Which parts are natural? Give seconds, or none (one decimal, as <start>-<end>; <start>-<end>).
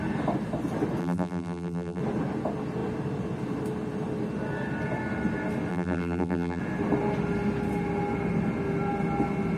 0.0-1.0; 2.0-5.7; 6.6-9.6